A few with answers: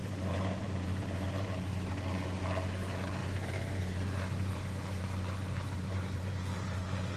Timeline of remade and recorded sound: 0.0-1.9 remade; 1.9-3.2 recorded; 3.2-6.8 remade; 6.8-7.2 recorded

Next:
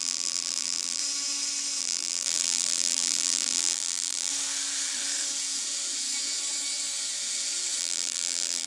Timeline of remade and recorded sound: 0.0-1.0 remade; 1.0-1.8 recorded; 1.8-4.3 remade; 4.3-7.8 recorded; 7.8-8.7 remade

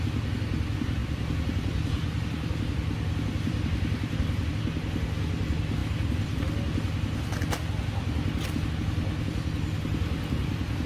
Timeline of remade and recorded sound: 0.0-1.0 recorded; 1.0-4.5 remade; 4.5-10.9 recorded

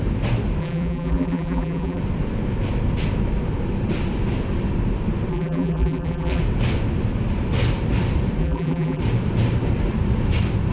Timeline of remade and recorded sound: 0.0-0.6 recorded; 0.6-2.0 remade; 2.0-5.3 recorded; 5.3-6.4 remade; 6.4-8.4 recorded; 8.4-9.0 remade; 9.0-10.7 recorded

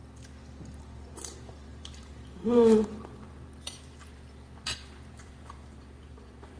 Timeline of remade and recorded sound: 0.0-0.8 recorded; 0.8-6.6 remade

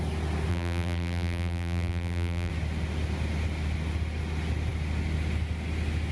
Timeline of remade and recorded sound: 0.0-0.5 recorded; 0.5-2.5 remade; 2.5-6.1 recorded

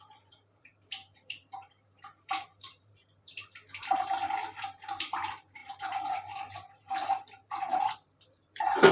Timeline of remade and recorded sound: 0.0-8.9 remade